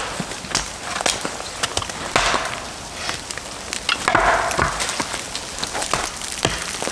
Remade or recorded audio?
recorded